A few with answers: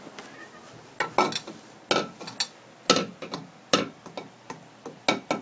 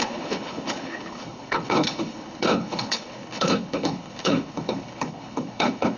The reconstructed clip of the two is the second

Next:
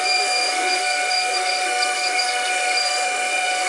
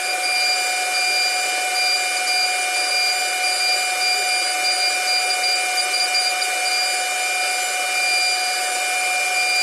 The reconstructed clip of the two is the first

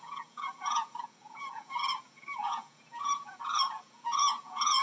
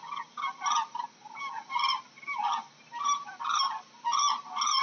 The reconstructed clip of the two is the first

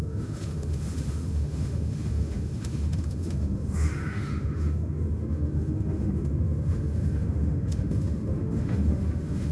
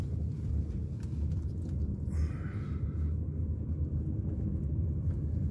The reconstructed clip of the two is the first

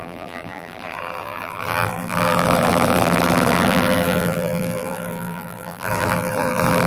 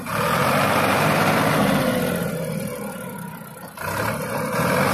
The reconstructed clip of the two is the first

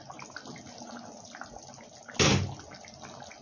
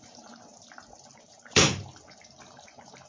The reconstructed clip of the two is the second